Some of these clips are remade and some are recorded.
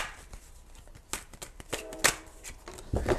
recorded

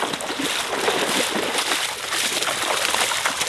recorded